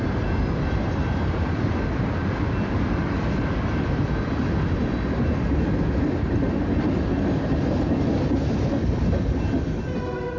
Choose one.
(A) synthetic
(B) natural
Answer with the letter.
B